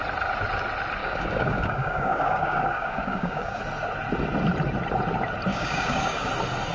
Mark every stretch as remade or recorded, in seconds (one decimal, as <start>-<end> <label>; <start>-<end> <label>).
0.0-1.0 recorded; 1.0-3.6 remade; 3.6-5.5 recorded; 5.5-6.3 remade; 6.3-6.7 recorded